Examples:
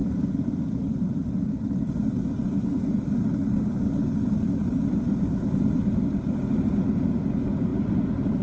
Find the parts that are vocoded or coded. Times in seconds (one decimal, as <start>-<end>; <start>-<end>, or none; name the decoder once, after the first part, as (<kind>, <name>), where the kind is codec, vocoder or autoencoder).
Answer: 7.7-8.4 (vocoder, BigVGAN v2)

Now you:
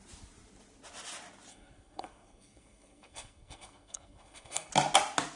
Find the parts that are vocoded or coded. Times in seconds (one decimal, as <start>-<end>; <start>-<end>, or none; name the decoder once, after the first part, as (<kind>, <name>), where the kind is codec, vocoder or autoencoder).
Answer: 1.5-4.7 (codec, SNAC)

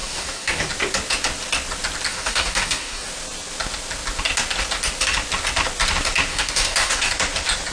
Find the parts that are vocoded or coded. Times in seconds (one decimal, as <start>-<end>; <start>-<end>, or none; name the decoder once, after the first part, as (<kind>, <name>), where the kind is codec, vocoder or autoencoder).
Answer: 0.0-0.7 (codec, DAC); 2.1-3.1; 6.3-7.1

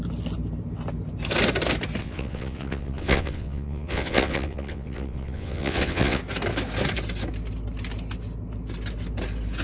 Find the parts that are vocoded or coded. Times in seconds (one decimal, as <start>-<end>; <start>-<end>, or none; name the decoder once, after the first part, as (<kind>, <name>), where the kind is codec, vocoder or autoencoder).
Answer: 2.0-6.2 (vocoder, WaveNeXt)